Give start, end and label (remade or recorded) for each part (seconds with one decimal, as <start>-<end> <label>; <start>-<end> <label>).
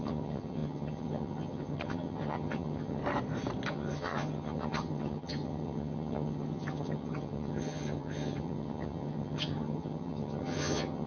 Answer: 0.0-3.0 remade; 3.0-3.7 recorded; 3.7-11.1 remade